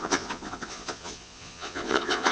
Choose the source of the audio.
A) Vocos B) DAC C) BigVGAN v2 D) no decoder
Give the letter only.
A